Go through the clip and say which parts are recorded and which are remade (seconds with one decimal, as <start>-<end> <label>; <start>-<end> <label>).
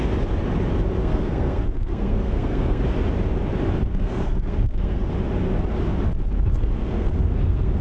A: 0.0-1.0 recorded; 1.0-2.8 remade; 2.8-3.9 recorded; 3.9-5.1 remade; 5.1-6.5 recorded; 6.5-7.8 remade